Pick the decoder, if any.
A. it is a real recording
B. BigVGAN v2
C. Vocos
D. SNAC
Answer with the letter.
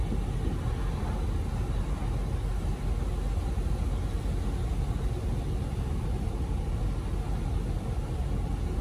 A